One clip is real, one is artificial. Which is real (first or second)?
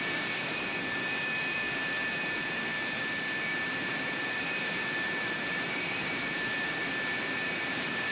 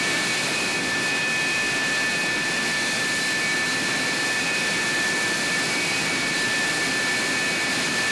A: second